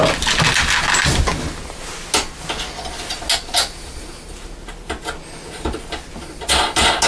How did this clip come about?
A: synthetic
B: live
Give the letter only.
B